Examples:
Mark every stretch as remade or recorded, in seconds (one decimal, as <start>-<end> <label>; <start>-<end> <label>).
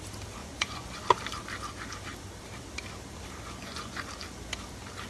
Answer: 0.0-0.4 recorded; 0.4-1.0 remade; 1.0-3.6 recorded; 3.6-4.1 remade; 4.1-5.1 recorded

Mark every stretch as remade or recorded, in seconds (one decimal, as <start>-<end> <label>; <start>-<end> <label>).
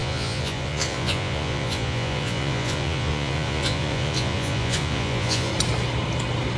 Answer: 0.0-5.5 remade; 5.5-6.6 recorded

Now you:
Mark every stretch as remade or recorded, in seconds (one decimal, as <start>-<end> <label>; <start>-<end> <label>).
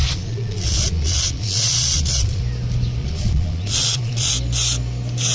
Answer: 0.0-2.4 remade; 2.4-3.0 recorded; 3.0-4.3 remade; 4.3-5.3 recorded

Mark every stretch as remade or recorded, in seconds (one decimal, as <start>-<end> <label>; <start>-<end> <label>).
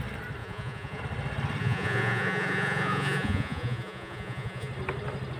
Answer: 0.0-0.4 recorded; 0.4-1.0 remade; 1.0-1.6 recorded; 1.6-4.7 remade; 4.7-5.4 recorded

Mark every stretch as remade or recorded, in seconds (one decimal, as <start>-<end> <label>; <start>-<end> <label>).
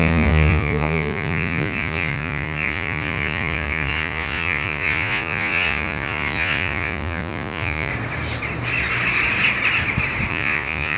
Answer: 0.0-7.9 remade; 7.9-10.3 recorded; 10.3-11.0 remade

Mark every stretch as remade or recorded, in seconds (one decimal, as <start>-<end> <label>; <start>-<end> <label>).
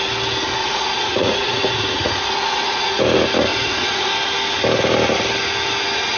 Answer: 0.0-0.6 recorded; 0.6-3.0 remade; 3.0-3.5 recorded; 3.5-4.1 remade; 4.1-6.2 recorded